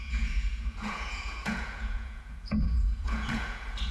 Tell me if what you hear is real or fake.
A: fake